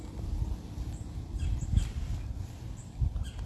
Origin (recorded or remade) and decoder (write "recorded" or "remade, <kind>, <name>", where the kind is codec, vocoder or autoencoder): recorded